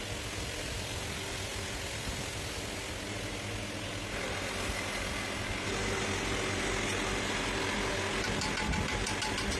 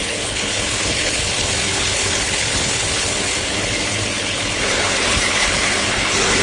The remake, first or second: second